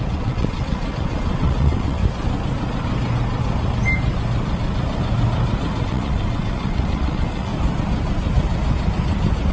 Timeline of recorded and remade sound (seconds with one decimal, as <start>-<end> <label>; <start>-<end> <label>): 0.0-2.0 remade; 2.0-5.8 recorded; 5.8-7.5 remade; 7.5-9.5 recorded